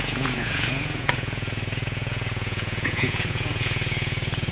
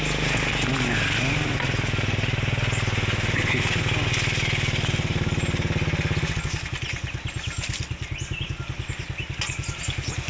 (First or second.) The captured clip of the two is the second